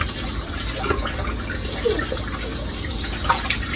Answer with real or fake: real